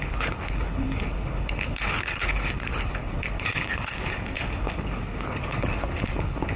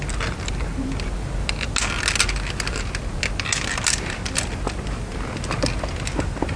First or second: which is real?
second